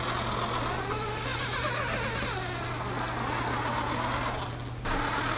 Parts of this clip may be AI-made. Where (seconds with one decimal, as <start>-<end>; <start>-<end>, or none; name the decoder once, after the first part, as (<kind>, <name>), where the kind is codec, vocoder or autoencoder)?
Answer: none